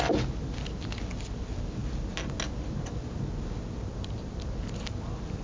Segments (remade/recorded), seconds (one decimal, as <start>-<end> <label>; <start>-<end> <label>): 0.0-5.4 recorded